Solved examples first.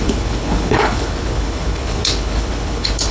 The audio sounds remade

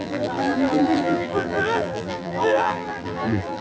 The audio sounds remade